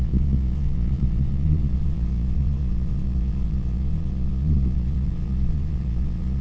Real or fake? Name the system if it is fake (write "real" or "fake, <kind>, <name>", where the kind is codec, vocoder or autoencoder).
fake, vocoder, Vocos